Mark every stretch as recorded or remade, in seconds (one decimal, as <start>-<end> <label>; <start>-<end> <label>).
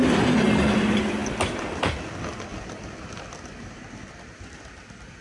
0.0-5.2 recorded